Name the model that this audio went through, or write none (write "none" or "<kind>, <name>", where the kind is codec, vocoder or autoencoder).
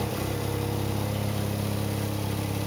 none